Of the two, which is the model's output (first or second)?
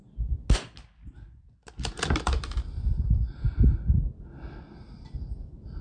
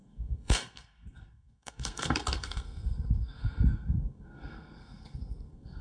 second